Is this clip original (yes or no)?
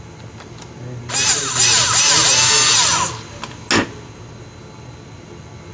yes